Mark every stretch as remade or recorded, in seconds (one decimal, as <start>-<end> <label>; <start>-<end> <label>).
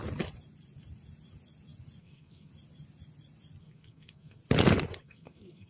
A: 0.0-2.0 recorded; 2.0-2.5 remade; 2.5-3.6 recorded; 3.6-4.4 remade; 4.4-5.0 recorded; 5.0-5.7 remade